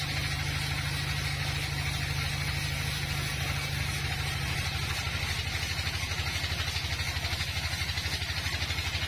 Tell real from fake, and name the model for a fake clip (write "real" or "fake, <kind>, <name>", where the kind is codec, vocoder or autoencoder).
real